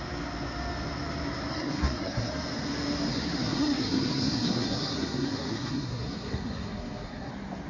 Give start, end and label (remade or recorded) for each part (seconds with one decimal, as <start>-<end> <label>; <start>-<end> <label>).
0.0-1.5 recorded; 1.5-2.3 remade; 2.3-3.1 recorded; 3.1-7.3 remade; 7.3-7.7 recorded